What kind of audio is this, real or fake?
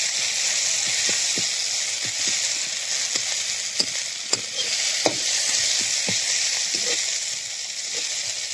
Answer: real